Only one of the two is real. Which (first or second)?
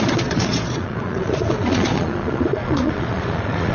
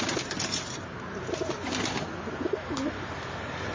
second